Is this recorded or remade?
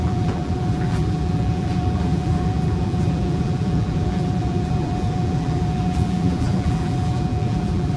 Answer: remade